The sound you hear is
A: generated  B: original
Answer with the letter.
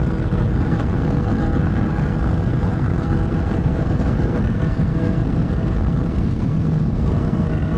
A